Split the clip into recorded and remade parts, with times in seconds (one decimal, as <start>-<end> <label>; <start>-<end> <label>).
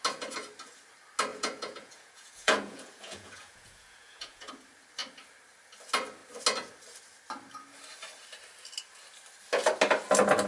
0.0-1.3 recorded; 1.3-4.5 remade; 4.5-10.5 recorded